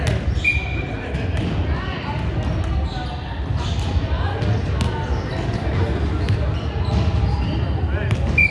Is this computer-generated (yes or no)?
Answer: no